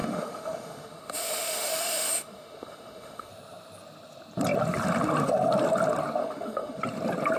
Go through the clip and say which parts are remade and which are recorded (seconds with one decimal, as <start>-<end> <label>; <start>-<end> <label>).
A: 0.0-3.3 remade; 3.3-6.2 recorded; 6.2-6.8 remade; 6.8-7.4 recorded